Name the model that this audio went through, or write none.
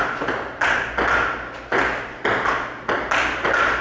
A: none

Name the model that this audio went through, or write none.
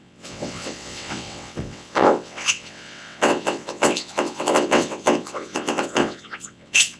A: vocoder, WaveNeXt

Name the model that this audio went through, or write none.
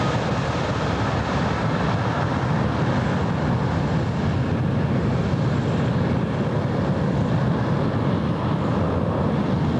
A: none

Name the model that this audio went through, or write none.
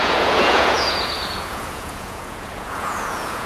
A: vocoder, Vocos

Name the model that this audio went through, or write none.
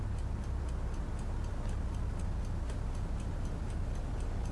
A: none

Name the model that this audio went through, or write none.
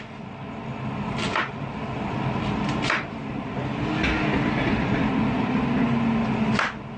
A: none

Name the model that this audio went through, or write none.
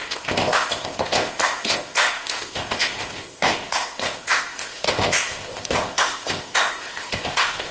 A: codec, ZipCodec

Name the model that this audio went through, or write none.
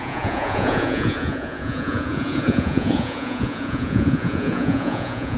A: vocoder, Vocos